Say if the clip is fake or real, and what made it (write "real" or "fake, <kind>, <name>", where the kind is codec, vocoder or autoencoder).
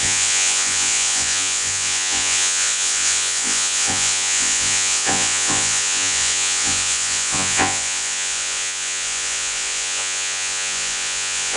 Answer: fake, vocoder, Vocos